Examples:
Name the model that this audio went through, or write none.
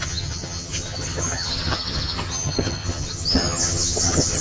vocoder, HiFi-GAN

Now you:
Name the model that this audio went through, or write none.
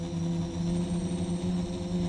none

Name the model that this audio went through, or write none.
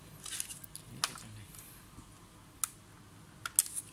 none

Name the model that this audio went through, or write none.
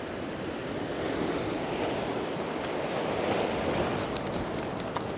none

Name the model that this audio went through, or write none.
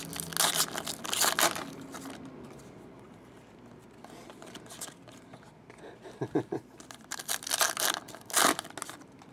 none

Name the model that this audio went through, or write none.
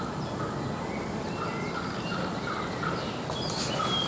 none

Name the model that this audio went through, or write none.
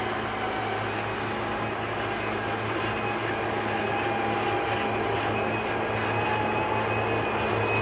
none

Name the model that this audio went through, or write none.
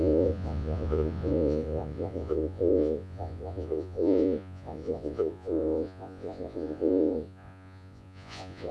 vocoder, Vocos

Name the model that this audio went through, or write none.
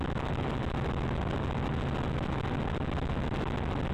none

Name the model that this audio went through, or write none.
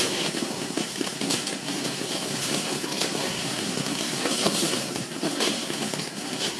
codec, SNAC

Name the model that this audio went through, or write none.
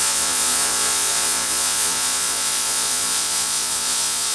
vocoder, Vocos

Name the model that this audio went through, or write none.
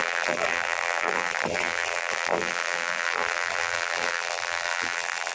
vocoder, BigVGAN v2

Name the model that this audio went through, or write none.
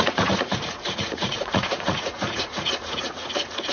vocoder, Vocos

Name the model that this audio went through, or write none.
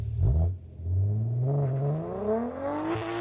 none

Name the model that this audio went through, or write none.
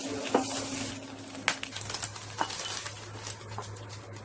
none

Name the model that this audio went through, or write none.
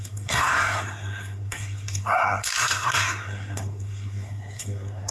codec, SNAC